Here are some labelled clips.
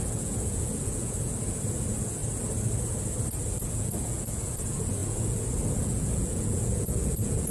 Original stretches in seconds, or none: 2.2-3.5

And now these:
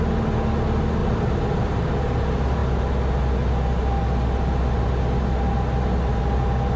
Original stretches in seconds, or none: 0.0-1.0; 1.6-6.8

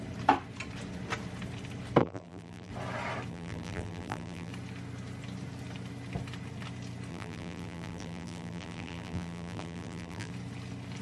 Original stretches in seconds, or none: 0.0-2.0; 2.7-3.3; 4.5-7.1; 10.3-11.0